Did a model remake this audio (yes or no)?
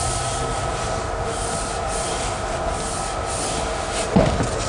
no